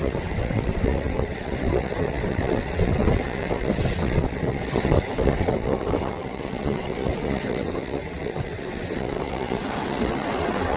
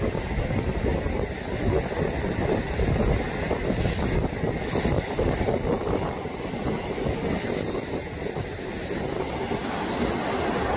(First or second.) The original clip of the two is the second